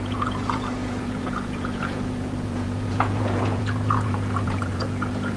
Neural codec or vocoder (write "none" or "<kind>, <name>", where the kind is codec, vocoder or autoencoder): vocoder, Vocos